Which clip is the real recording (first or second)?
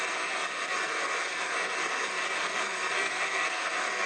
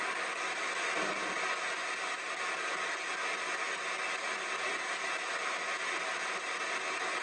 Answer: second